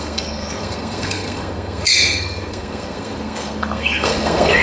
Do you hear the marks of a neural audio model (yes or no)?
yes